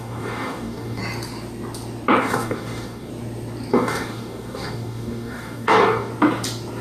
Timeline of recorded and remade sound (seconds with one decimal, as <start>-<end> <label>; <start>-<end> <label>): 0.0-1.0 remade; 1.0-2.2 recorded; 2.2-3.1 remade; 3.1-3.7 recorded; 3.7-6.1 remade; 6.1-6.8 recorded